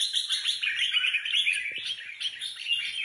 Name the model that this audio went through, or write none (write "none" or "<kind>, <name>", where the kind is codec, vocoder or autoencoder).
none